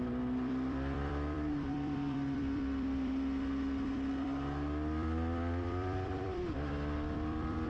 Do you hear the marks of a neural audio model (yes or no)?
yes